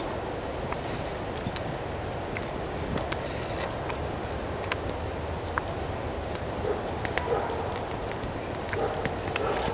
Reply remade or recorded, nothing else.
recorded